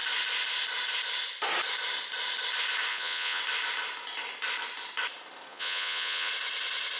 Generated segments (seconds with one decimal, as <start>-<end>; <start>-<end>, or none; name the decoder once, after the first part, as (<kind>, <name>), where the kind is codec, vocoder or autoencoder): 2.9-3.4 (vocoder, Vocos); 5.5-6.3